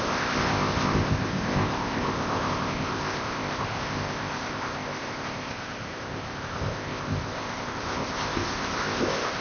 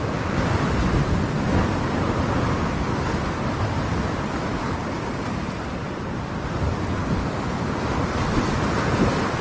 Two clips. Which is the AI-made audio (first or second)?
first